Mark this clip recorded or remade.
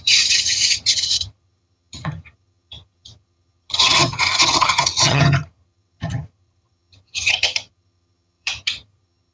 remade